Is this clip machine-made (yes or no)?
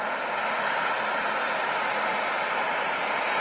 no